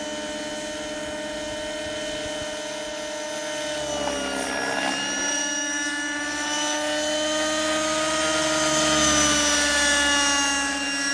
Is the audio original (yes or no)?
yes